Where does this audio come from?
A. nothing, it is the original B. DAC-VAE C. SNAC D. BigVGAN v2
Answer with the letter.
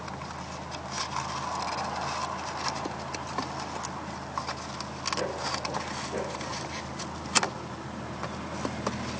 A